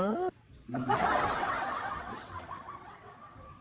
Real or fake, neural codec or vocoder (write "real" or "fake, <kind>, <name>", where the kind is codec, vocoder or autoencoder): fake, vocoder, WaveNeXt